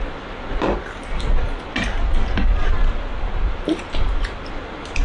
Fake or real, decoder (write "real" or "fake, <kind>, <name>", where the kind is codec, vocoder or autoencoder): real